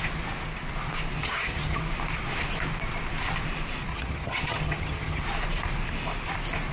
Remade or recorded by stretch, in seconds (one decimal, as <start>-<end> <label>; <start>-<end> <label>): 0.0-1.2 recorded; 1.2-1.8 remade; 1.8-3.9 recorded; 3.9-5.2 remade; 5.2-6.7 recorded